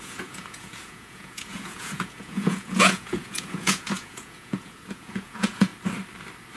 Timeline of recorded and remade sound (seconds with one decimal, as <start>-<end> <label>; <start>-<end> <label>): 0.0-5.7 remade; 5.7-6.6 recorded

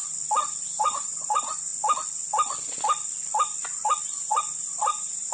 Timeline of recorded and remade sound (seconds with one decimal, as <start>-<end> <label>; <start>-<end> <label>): 0.0-0.6 recorded; 0.6-1.7 remade; 1.7-4.0 recorded; 4.0-5.3 remade